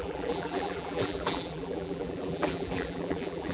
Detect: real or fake fake